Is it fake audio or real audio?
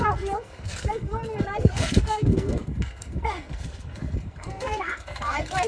fake